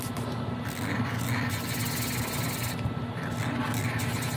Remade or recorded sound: recorded